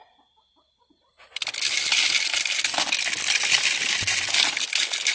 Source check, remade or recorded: recorded